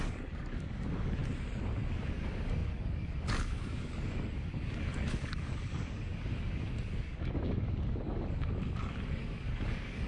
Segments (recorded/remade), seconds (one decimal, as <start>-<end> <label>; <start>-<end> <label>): 0.0-1.2 remade; 1.2-1.9 recorded; 1.9-10.1 remade

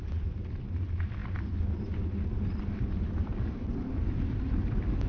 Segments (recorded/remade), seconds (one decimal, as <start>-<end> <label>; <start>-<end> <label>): 0.0-5.1 recorded

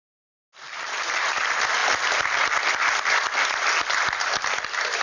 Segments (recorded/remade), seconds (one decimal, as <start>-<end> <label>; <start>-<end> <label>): 0.0-5.0 recorded

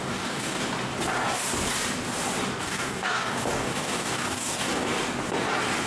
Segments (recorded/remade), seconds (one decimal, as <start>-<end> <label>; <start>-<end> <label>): 0.0-0.6 remade; 0.6-2.6 recorded; 2.6-4.9 remade; 4.9-5.9 recorded

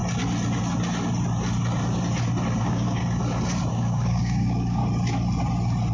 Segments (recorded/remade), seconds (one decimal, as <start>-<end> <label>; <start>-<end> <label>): 0.0-2.6 recorded; 2.6-3.0 remade; 3.0-3.7 recorded; 3.7-4.8 remade; 4.8-5.9 recorded

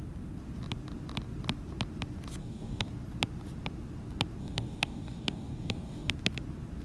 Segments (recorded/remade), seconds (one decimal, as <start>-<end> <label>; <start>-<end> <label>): 0.0-2.4 recorded; 2.4-2.9 remade; 2.9-4.4 recorded; 4.4-6.1 remade; 6.1-6.8 recorded